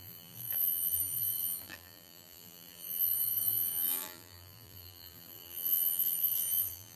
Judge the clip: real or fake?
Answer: fake